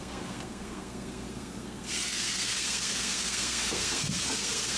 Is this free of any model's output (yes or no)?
no